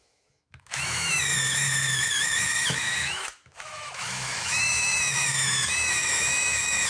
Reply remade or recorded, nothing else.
remade